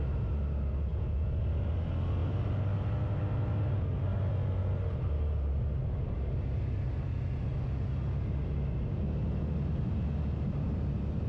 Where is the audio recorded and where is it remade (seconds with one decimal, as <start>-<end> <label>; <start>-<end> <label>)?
0.0-0.9 recorded; 0.9-1.4 remade; 1.4-11.3 recorded